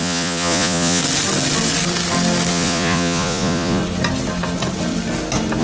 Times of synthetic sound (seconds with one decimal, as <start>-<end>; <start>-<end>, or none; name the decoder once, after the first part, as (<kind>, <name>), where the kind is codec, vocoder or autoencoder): 0.0-1.0 (vocoder, Vocos); 2.5-3.8